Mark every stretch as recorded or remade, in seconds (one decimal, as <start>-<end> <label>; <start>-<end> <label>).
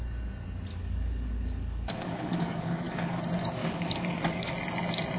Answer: 0.0-0.7 recorded; 0.7-3.2 remade; 3.2-3.6 recorded; 3.6-4.5 remade; 4.5-5.2 recorded